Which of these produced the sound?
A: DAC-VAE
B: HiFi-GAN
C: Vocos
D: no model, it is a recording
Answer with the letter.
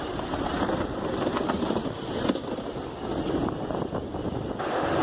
D